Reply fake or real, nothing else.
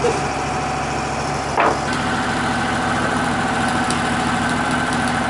real